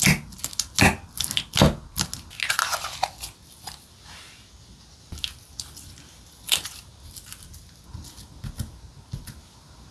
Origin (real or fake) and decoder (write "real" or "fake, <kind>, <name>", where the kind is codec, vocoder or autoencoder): real